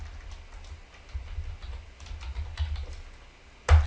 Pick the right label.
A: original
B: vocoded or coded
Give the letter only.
A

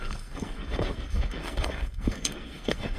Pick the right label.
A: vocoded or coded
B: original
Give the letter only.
A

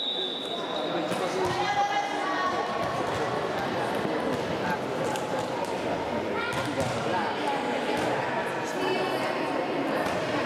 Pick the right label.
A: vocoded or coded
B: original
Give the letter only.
B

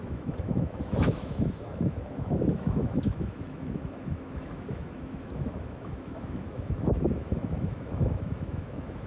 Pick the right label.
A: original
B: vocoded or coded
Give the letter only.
B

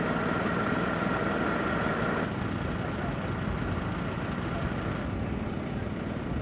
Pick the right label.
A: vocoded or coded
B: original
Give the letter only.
B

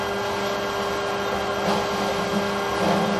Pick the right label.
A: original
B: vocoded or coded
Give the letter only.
A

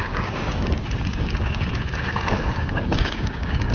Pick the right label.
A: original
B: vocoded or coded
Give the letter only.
B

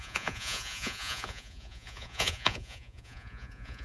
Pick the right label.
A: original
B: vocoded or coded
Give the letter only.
B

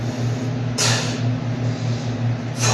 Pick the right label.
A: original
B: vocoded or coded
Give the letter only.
A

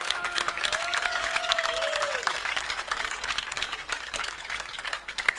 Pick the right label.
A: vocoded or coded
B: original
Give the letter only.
A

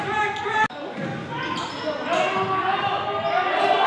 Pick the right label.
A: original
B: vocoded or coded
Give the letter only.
A